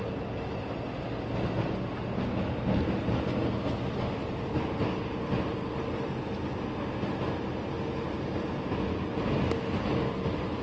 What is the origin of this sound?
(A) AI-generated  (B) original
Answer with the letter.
B